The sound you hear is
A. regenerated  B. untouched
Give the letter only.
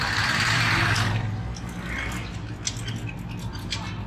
B